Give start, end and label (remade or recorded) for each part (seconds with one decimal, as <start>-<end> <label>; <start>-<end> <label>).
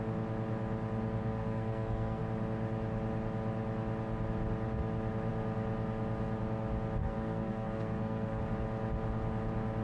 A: 0.0-1.2 recorded; 1.2-2.2 remade; 2.2-7.0 recorded; 7.0-8.4 remade; 8.4-9.8 recorded